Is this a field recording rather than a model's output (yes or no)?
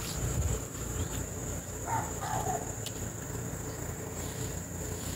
no